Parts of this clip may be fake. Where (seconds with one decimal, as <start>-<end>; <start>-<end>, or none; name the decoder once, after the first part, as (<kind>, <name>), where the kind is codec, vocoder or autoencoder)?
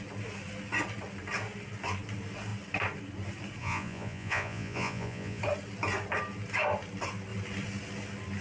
3.6-5.4 (vocoder, Vocos)